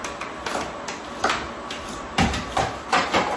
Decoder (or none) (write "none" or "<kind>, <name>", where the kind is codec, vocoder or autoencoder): none